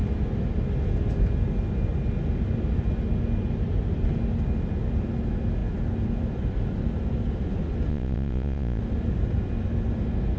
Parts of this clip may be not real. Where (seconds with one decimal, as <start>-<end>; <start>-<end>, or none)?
7.9-8.8